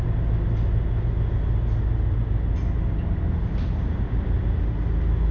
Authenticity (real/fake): real